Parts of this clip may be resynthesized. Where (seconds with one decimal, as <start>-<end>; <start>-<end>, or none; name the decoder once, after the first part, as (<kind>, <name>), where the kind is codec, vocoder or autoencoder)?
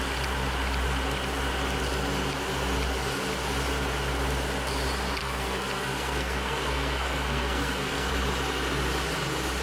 5.2-8.1 (codec, SNAC)